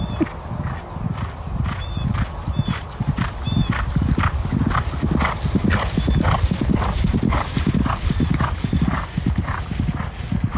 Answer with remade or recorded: recorded